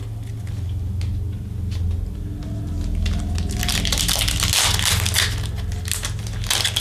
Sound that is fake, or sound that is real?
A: real